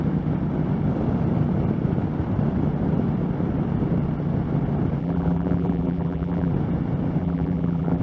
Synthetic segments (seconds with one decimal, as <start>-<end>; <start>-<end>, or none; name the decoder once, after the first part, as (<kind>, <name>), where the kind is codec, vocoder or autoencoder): 5.0-6.5 (vocoder, BigVGAN v2); 7.2-8.0